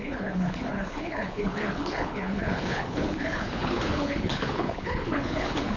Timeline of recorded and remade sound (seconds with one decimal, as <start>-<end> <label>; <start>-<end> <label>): 0.0-5.8 remade